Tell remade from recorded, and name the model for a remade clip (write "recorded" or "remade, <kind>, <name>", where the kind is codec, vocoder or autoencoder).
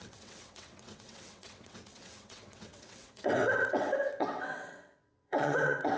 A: remade, vocoder, WaveNeXt